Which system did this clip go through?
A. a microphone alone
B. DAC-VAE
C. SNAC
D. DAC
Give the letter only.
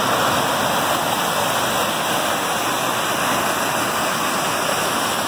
A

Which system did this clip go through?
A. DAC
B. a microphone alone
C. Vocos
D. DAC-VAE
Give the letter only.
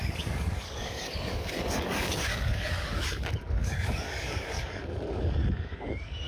A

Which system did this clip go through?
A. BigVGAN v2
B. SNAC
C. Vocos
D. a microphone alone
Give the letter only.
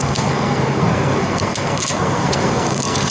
B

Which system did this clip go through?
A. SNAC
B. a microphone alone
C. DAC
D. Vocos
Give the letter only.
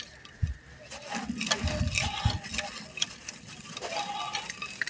B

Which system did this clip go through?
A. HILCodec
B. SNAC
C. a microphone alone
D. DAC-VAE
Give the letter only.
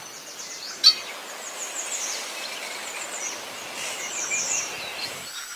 C